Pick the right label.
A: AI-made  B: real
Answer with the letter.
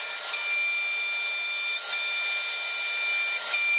B